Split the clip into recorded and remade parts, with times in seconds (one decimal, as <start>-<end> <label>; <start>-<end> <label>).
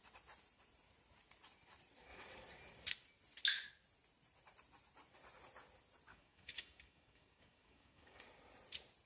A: 0.0-6.1 recorded; 6.1-8.2 remade; 8.2-9.1 recorded